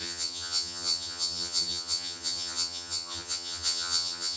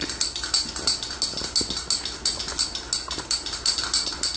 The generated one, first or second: first